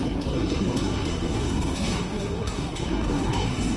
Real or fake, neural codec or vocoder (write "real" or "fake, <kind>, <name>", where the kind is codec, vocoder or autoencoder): fake, codec, SNAC